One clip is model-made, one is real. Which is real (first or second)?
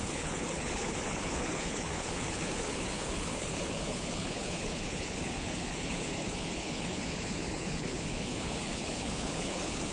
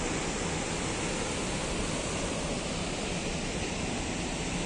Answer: second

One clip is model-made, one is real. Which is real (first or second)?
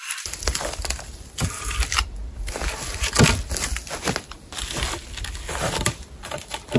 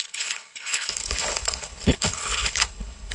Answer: first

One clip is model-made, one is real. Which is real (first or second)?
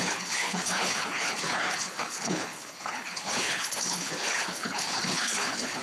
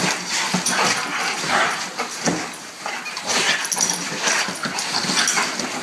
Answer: second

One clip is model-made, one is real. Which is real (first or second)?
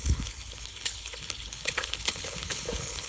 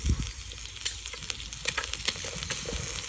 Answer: second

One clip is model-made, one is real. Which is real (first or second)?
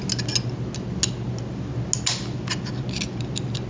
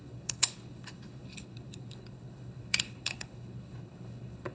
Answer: first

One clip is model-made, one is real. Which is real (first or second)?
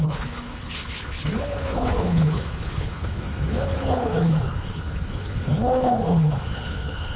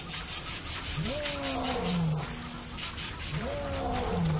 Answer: second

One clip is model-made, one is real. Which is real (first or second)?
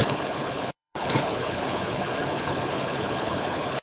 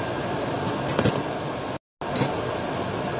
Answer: second